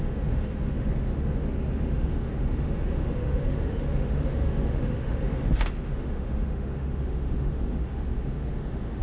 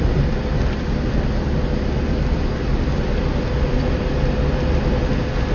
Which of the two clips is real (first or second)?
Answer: second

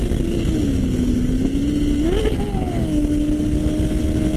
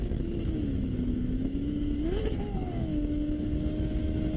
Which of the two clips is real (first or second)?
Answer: first